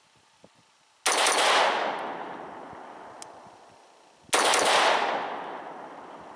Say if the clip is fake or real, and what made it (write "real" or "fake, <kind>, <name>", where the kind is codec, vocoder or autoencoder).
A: real